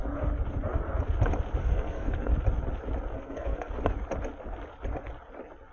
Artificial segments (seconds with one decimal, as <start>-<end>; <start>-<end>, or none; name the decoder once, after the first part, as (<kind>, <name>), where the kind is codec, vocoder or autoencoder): 1.6-2.3 (codec, SNAC); 3.1-3.7